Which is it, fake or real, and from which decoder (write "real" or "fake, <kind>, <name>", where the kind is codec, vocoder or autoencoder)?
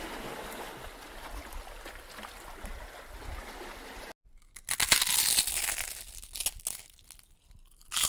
real